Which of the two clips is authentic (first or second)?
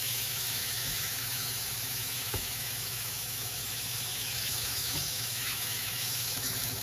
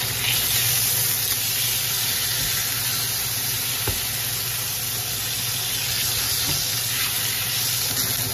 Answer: second